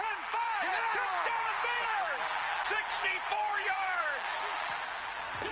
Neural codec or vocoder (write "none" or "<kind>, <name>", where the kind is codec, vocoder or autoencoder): vocoder, BigVGAN v2